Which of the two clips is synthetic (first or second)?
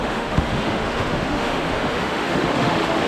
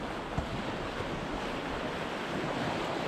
first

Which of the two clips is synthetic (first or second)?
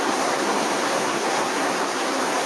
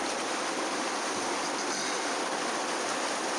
first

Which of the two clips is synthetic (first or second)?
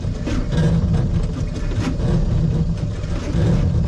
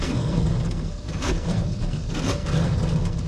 second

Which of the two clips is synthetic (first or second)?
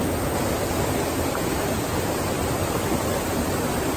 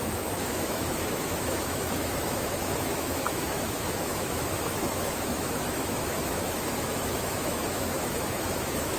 second